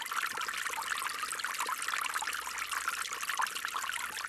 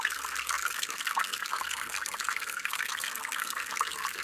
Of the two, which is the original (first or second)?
first